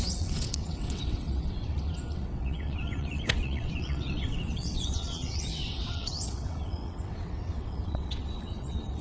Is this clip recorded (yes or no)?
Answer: no